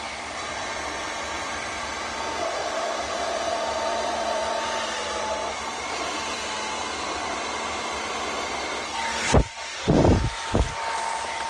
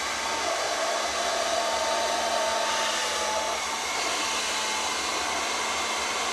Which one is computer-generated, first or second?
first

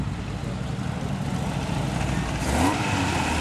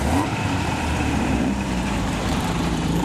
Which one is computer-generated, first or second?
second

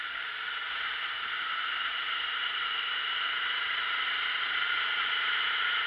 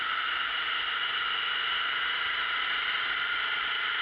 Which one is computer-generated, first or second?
first